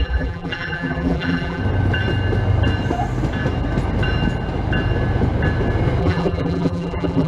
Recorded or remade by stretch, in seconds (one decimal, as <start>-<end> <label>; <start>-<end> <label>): 0.0-1.6 remade; 1.6-6.0 recorded; 6.0-7.3 remade